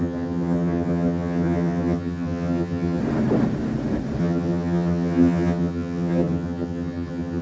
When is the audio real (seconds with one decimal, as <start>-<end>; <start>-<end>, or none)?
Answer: 3.0-4.2